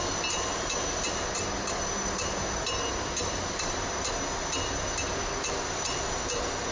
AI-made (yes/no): no